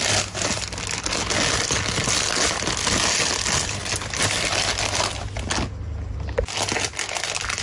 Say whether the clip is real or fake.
real